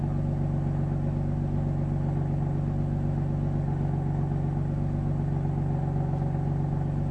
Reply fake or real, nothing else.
real